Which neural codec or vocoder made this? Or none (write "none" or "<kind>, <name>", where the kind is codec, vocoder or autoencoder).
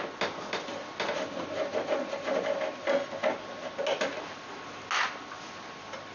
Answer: none